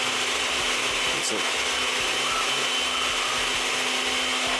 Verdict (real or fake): real